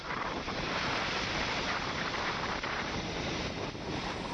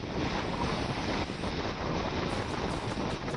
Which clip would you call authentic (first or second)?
second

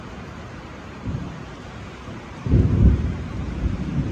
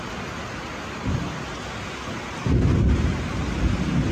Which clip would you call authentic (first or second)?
second